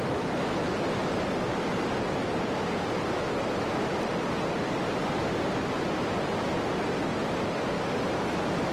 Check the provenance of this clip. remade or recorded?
recorded